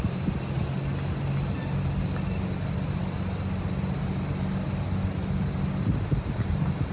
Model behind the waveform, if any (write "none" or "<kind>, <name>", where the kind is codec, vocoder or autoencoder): none